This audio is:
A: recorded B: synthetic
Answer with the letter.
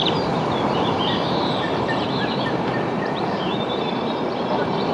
B